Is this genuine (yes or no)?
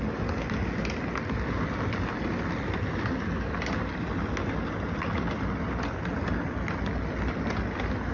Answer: yes